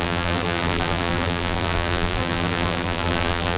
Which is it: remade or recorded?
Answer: remade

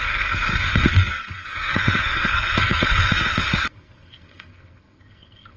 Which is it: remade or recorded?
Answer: remade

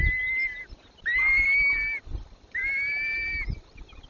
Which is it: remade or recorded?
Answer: recorded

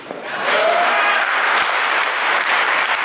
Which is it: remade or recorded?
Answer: remade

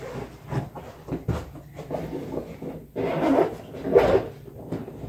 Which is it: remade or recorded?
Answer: recorded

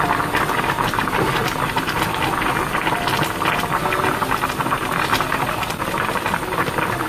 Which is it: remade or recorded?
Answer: recorded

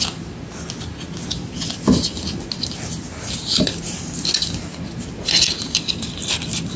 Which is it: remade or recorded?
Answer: recorded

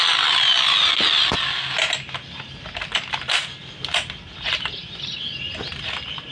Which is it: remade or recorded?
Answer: recorded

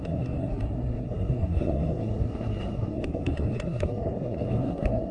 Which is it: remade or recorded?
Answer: remade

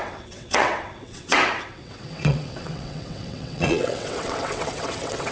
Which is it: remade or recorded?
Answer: remade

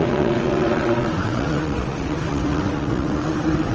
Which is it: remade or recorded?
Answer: remade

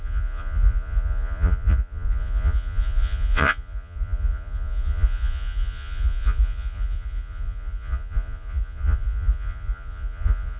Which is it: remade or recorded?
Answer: remade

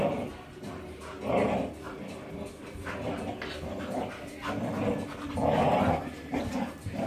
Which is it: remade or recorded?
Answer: recorded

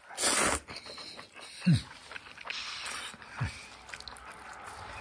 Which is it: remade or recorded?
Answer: recorded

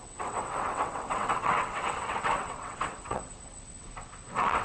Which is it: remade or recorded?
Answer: remade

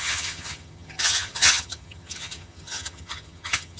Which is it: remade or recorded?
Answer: remade